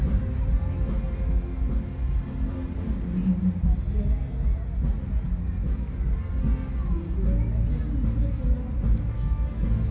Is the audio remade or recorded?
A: recorded